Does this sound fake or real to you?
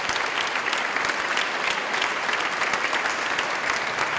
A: real